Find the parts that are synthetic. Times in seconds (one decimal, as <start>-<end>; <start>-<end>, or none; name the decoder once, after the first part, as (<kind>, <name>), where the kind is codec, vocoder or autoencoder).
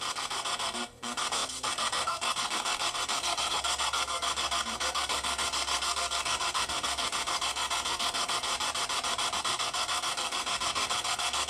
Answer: 0.0-8.5 (codec, SNAC); 9.4-11.5